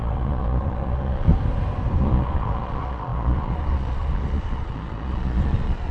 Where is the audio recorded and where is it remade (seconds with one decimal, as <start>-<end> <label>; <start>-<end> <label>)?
0.0-1.3 remade; 1.3-2.0 recorded; 2.0-5.9 remade